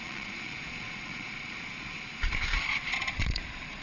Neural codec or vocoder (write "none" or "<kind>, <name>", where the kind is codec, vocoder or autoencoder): vocoder, Vocos